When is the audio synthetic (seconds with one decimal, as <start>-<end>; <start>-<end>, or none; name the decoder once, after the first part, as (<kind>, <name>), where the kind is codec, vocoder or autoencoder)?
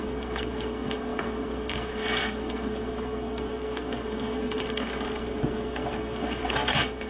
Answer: 0.0-7.1 (codec, SNAC)